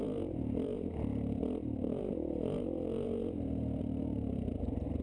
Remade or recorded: remade